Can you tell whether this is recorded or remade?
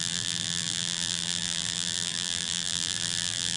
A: remade